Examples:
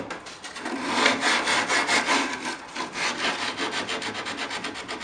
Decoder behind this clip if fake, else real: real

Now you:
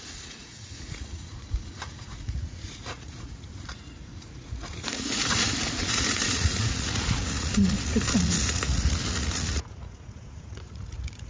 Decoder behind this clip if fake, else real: fake, vocoder, Vocos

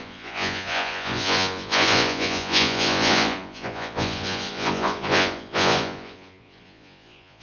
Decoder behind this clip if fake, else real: fake, vocoder, Vocos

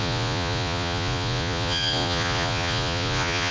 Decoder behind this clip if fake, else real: fake, vocoder, Vocos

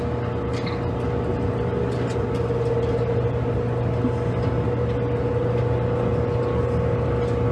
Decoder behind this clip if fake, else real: real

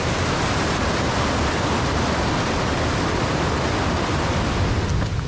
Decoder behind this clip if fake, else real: real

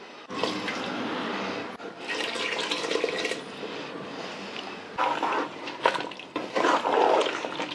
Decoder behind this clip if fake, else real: real